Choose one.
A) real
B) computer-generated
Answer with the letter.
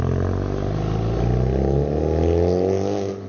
A